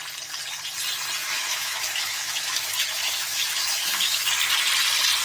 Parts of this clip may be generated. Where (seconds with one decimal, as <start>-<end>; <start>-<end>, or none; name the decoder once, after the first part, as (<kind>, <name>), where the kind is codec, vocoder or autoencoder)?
1.2-4.3 (autoencoder, DAC-VAE)